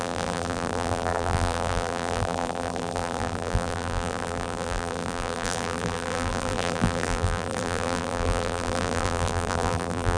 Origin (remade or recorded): remade